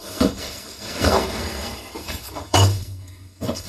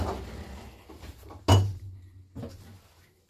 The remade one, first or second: first